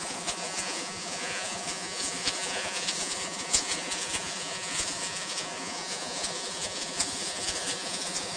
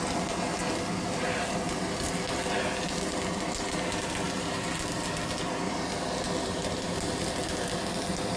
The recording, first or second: second